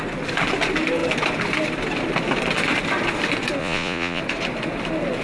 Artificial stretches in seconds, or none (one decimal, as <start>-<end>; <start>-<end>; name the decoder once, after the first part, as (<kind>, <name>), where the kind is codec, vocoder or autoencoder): 3.6-4.2 (vocoder, Vocos)